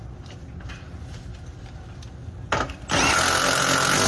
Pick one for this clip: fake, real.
real